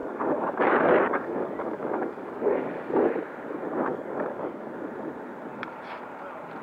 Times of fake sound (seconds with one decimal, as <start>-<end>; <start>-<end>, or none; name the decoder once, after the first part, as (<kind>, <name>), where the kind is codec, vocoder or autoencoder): 0.0-3.1 (codec, DAC); 3.9-4.7